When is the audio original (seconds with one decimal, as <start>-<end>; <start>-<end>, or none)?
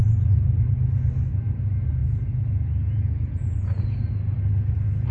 0.7-2.0; 3.8-5.1